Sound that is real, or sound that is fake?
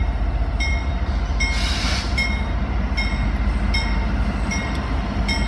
real